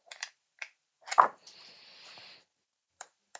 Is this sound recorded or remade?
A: remade